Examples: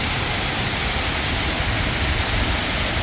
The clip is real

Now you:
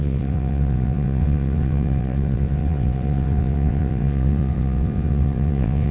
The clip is fake